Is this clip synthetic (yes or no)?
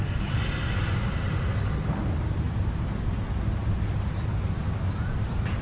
no